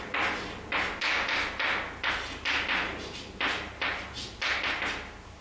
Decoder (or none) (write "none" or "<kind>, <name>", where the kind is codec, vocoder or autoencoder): none